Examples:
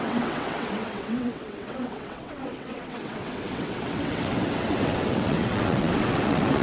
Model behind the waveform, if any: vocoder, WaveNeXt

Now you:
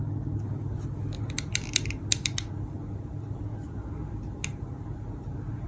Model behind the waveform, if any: none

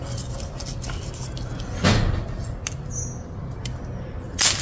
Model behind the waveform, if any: none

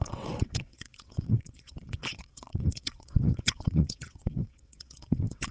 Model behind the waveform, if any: vocoder, WaveNeXt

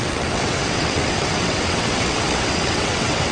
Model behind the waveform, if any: vocoder, WaveNeXt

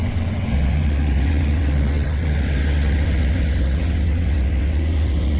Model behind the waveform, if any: vocoder, WaveNeXt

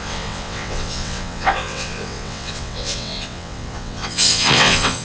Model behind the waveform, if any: vocoder, WaveNeXt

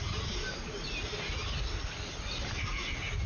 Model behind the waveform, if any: none